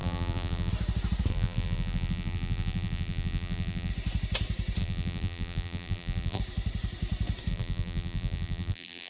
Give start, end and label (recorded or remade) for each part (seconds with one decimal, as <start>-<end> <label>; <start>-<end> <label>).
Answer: 0.0-0.7 remade; 0.7-1.3 recorded; 1.3-3.9 remade; 3.9-4.8 recorded; 4.8-6.4 remade; 6.4-7.5 recorded; 7.5-9.1 remade